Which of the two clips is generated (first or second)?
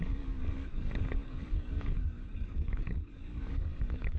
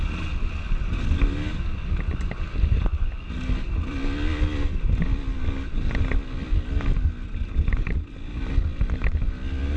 first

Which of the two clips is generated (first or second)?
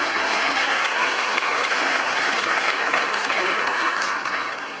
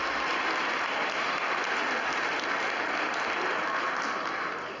first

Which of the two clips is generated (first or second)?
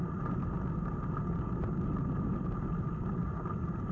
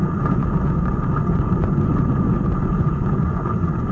second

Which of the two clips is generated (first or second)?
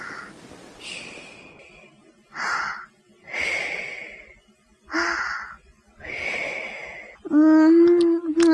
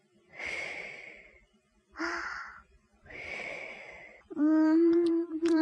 second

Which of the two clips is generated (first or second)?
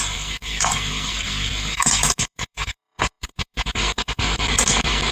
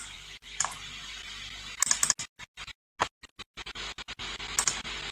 first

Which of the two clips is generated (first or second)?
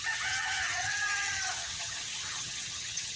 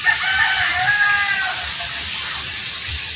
first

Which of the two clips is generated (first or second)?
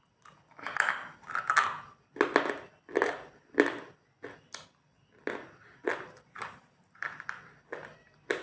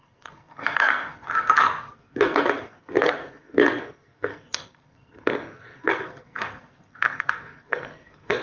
second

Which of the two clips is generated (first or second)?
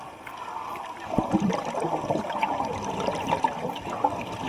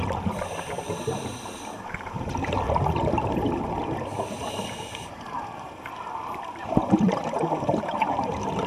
second